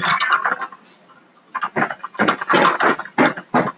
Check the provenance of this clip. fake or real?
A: real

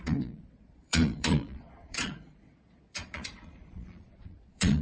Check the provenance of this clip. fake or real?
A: fake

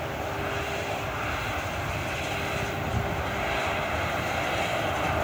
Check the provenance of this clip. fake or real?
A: real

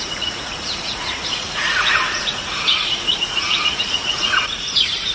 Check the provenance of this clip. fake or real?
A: fake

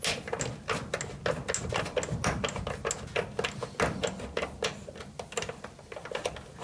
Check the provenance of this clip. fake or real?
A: real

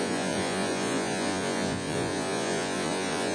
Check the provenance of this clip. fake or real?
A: fake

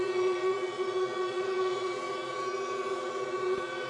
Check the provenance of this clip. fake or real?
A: fake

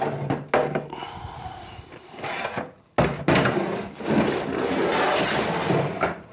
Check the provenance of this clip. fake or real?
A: real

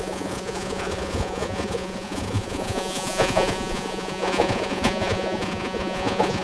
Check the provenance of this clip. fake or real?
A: fake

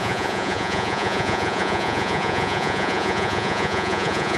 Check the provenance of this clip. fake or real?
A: fake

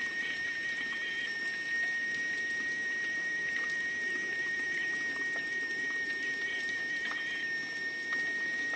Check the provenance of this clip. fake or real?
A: real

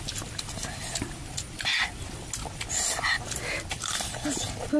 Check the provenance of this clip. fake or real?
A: real